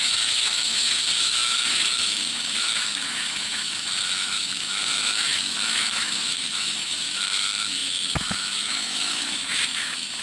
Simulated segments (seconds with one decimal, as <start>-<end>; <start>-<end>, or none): 0.0-10.2